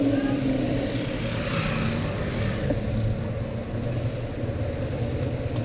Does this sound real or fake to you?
real